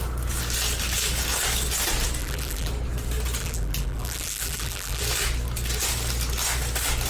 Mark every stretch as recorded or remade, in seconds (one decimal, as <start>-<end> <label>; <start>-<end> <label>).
0.0-2.2 recorded; 2.2-2.7 remade; 2.7-3.4 recorded; 3.4-5.0 remade; 5.0-7.1 recorded